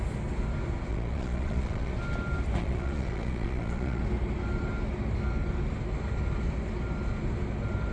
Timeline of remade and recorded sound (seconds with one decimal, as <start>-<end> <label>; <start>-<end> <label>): 0.0-0.9 recorded; 0.9-1.9 remade; 1.9-2.6 recorded; 2.6-4.0 remade; 4.0-7.9 recorded